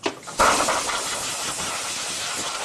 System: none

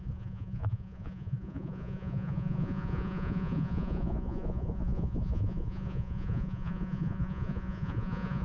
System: vocoder, Vocos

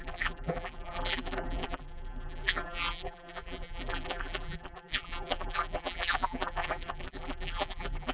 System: vocoder, BigVGAN v2